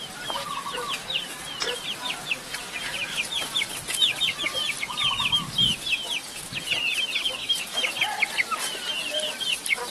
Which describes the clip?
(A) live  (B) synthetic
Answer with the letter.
B